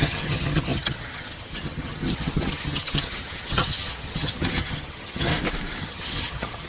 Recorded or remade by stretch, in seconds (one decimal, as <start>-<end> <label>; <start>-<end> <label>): 0.0-5.3 remade; 5.3-5.8 recorded; 5.8-6.7 remade